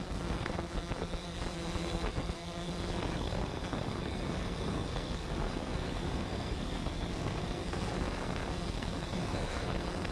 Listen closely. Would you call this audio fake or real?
fake